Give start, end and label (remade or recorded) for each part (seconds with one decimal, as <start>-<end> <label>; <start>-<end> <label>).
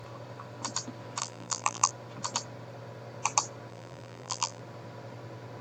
0.0-1.2 recorded; 1.2-1.9 remade; 1.9-3.7 recorded; 3.7-4.6 remade; 4.6-5.6 recorded